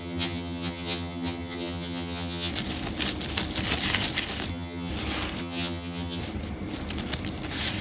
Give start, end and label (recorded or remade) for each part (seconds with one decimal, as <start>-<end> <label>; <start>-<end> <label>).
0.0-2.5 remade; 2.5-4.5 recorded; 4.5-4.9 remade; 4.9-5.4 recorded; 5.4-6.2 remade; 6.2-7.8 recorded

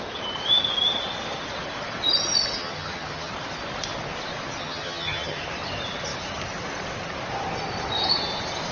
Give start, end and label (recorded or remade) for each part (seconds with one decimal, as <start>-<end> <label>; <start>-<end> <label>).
0.0-2.6 recorded; 2.6-3.3 remade; 3.3-4.6 recorded; 4.6-5.4 remade; 5.4-8.7 recorded

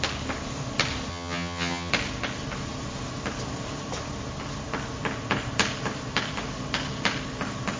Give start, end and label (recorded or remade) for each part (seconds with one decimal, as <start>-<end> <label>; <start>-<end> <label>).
0.0-1.1 recorded; 1.1-1.9 remade; 1.9-7.8 recorded